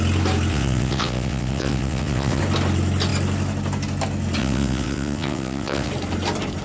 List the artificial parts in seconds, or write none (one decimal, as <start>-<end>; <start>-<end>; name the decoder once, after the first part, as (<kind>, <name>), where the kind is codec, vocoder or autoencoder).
0.5-2.4 (vocoder, WaveNeXt); 4.4-5.9